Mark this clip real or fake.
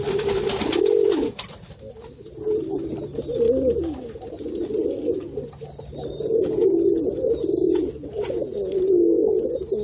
real